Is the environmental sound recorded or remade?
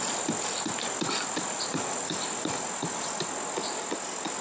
recorded